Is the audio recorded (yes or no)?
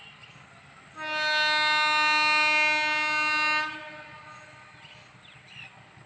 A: yes